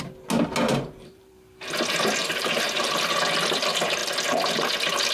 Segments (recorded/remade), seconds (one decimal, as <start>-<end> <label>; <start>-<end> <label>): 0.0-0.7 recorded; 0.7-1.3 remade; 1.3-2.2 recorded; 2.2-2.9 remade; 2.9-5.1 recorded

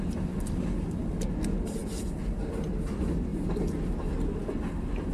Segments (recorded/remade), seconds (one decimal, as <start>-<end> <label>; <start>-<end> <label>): 0.0-5.1 recorded

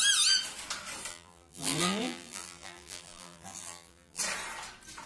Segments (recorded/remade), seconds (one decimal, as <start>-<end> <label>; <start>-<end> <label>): 0.0-1.1 recorded; 1.1-4.2 remade; 4.2-5.1 recorded